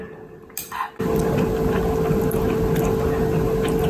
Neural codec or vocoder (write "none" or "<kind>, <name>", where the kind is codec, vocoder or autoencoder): none